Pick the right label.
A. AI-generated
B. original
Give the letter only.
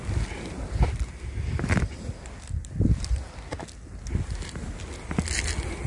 B